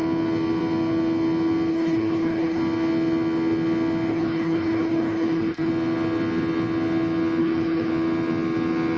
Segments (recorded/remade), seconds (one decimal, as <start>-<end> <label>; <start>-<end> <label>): 0.0-1.7 recorded; 1.7-2.6 remade; 2.6-4.1 recorded; 4.1-5.7 remade; 5.7-7.4 recorded; 7.4-7.9 remade; 7.9-9.0 recorded